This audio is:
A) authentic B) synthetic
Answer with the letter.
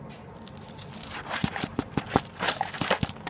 A